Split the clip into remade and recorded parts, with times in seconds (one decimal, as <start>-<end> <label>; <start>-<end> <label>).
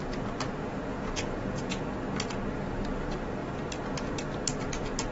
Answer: 0.0-0.7 recorded; 0.7-1.9 remade; 1.9-5.1 recorded